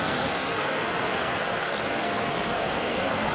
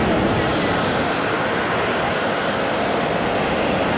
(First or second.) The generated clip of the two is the first